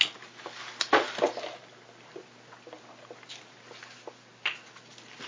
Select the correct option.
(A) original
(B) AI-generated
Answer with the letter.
A